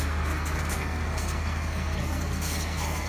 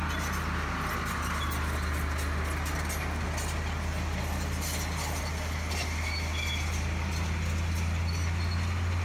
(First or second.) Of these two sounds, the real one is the second